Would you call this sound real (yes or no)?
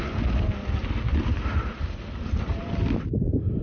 yes